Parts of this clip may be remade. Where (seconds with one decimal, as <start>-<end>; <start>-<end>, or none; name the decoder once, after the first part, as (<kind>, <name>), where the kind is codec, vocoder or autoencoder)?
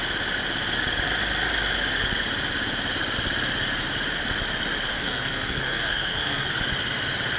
4.9-6.5 (codec, SNAC)